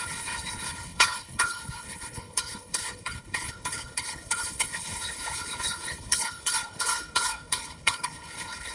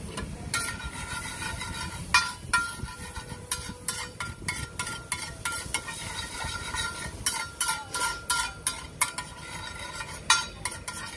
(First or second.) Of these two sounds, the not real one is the first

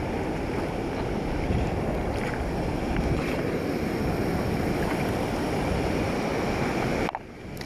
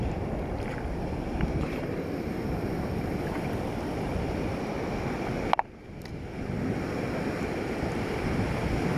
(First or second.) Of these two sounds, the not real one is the second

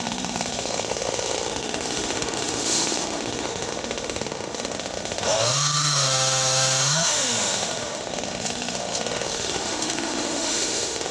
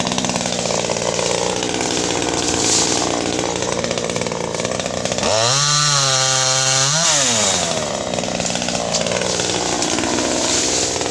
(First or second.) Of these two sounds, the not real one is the first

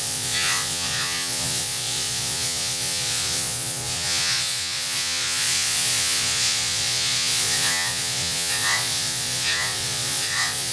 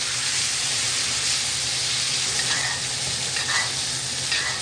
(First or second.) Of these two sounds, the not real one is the first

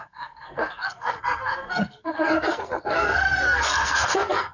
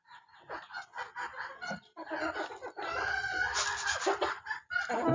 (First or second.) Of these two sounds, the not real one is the first